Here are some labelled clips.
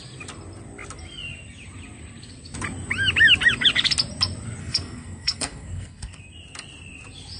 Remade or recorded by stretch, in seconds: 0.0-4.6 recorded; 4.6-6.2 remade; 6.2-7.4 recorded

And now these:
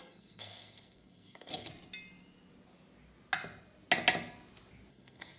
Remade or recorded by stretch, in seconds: 0.0-1.7 remade; 1.7-4.9 recorded; 4.9-5.4 remade